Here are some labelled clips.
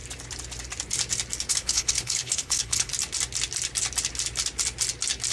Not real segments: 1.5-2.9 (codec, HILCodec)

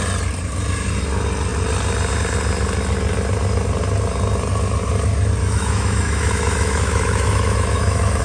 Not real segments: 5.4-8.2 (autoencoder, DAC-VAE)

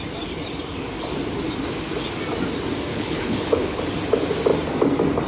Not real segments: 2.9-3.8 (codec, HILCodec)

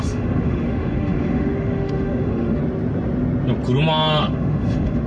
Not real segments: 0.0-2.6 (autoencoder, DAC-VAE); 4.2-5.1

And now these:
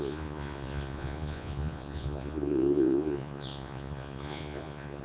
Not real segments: 0.0-5.0 (vocoder, Vocos)

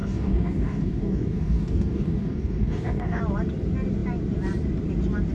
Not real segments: 0.0-3.2 (codec, DAC)

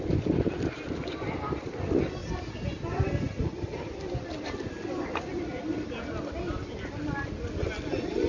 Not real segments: 2.2-4.0 (vocoder, BigVGAN v2)

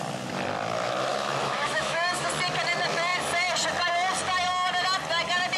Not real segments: 1.1-2.3 (autoencoder, DAC-VAE)